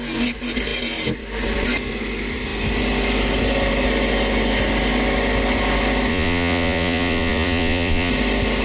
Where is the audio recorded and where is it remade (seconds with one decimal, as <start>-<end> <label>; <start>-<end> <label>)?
0.0-6.1 recorded; 6.1-8.1 remade; 8.1-8.6 recorded